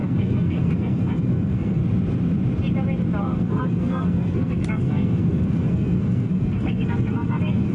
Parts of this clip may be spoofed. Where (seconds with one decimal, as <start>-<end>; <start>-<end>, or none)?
0.0-1.8; 3.2-7.7